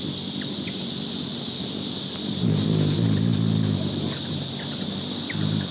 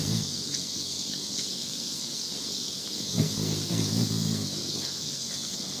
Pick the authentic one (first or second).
first